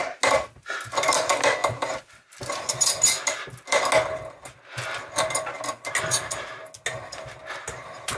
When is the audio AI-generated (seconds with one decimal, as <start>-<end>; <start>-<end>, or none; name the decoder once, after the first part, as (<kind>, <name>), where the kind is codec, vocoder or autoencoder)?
none